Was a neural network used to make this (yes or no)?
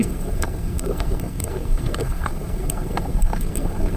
yes